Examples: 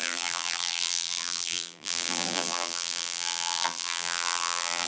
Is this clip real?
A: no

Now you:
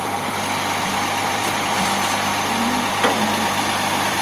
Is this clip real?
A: no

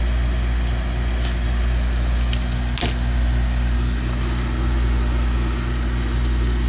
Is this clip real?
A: yes